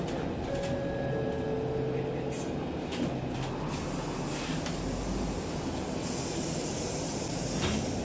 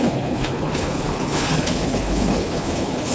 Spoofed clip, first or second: second